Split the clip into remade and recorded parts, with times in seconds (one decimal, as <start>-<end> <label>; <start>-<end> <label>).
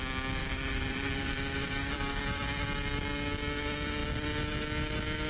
0.0-0.4 recorded; 0.4-2.2 remade; 2.2-5.3 recorded